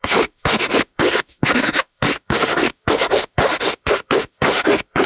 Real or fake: fake